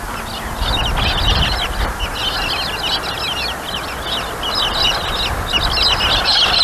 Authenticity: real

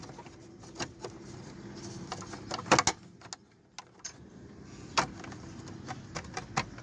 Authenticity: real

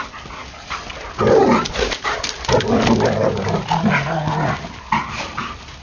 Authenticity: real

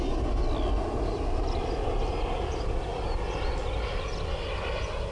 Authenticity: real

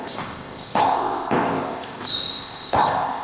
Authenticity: fake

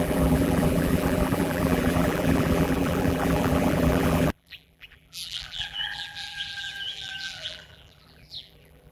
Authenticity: fake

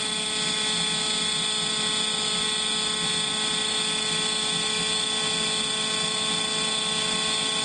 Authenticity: real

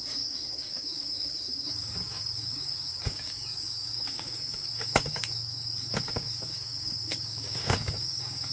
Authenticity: fake